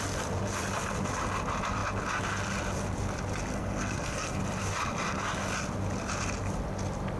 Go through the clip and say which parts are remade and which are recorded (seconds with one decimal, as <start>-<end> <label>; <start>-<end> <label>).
0.0-3.5 recorded; 3.5-4.4 remade; 4.4-7.2 recorded